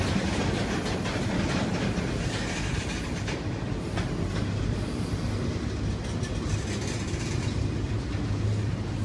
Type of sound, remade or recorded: recorded